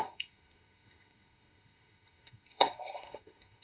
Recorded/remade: remade